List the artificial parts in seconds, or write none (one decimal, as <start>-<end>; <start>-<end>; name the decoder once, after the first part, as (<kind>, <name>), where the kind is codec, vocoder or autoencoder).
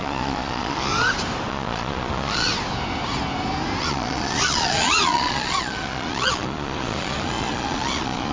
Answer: 0.0-0.9 (vocoder, Vocos); 1.5-2.5; 3.8-8.3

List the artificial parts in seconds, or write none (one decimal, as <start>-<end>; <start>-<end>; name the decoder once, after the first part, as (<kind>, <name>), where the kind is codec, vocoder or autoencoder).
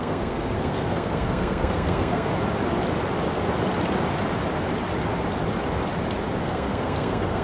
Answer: 0.0-2.3 (codec, SNAC); 6.4-7.4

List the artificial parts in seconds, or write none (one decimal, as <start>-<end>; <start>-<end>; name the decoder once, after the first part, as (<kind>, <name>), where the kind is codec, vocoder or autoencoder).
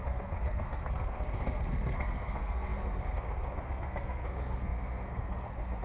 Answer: 0.0-5.8 (codec, SNAC)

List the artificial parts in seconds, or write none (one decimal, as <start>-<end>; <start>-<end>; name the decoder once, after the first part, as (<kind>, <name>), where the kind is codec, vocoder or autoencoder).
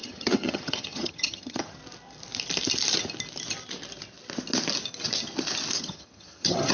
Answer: 0.0-1.8 (vocoder, HiFi-GAN); 5.8-6.7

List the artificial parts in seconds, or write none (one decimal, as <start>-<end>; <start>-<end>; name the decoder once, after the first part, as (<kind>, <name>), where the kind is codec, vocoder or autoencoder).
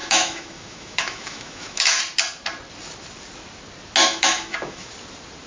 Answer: 0.0-2.0 (autoencoder, DAC-VAE); 4.0-4.9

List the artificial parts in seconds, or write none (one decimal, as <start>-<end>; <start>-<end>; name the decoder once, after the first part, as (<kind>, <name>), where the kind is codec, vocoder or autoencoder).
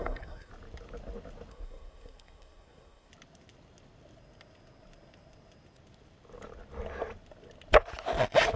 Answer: 0.0-0.5 (codec, SNAC); 1.5-3.1